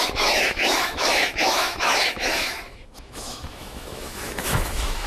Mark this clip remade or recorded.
remade